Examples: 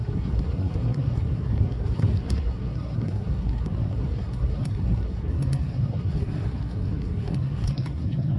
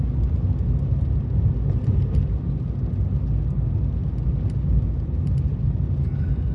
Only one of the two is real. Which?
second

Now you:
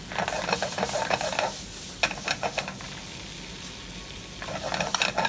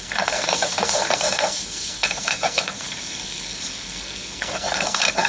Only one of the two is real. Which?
first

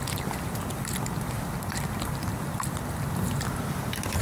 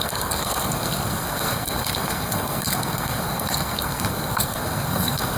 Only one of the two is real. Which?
first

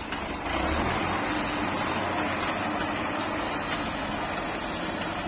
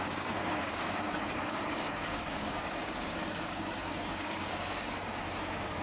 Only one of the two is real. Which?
first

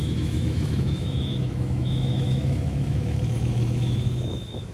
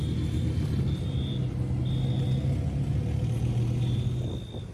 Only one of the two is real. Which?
second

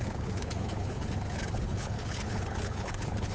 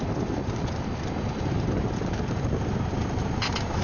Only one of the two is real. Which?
second